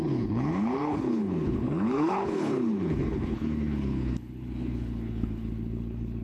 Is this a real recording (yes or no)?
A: no